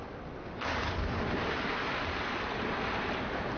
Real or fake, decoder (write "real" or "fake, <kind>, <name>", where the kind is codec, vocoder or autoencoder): real